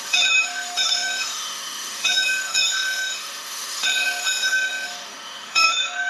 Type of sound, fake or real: fake